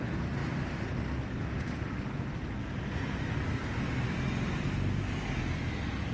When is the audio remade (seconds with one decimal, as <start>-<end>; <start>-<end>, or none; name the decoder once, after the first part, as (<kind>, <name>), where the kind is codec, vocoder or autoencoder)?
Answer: none